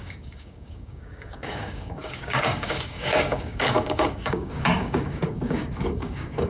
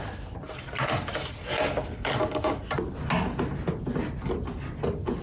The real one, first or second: second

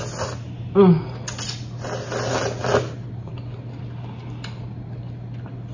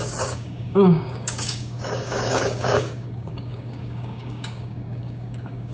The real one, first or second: first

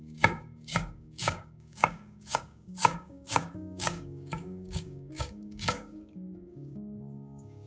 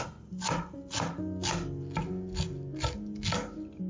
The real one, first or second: second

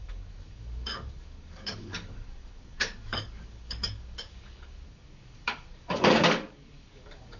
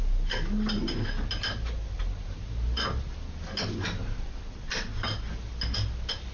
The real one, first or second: second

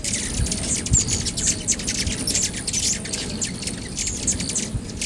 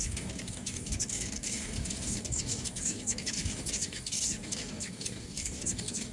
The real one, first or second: first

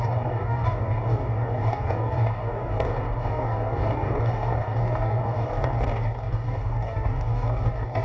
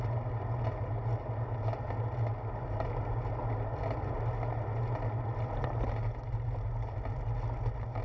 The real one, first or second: second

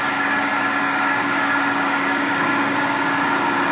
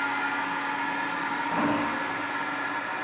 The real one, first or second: second